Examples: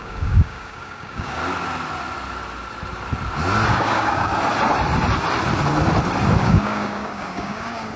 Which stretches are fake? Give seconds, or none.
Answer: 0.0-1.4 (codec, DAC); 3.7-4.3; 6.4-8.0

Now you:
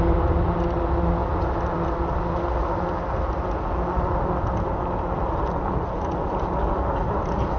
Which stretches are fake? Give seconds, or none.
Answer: none